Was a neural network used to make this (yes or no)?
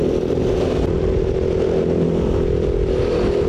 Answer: no